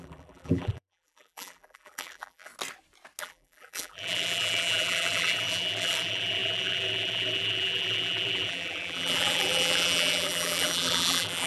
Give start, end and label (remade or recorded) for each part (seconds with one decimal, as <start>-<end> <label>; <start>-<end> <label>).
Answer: 0.0-2.5 remade; 2.5-3.2 recorded; 3.2-11.5 remade

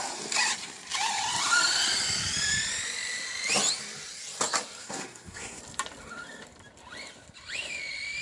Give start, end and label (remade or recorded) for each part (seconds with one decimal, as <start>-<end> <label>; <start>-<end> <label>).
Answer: 0.0-4.8 recorded; 4.8-5.6 remade; 5.6-8.2 recorded

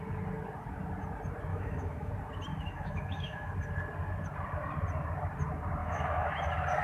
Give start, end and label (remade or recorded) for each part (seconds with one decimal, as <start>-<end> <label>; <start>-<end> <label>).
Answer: 0.0-1.5 recorded; 1.5-2.1 remade; 2.1-2.5 recorded; 2.5-3.5 remade; 3.5-5.8 recorded; 5.8-6.3 remade; 6.3-6.8 recorded

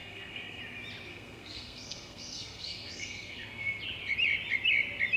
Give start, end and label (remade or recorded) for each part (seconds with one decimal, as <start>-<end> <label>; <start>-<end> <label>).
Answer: 0.0-0.6 remade; 0.6-1.1 recorded; 1.1-3.8 remade; 3.8-5.2 recorded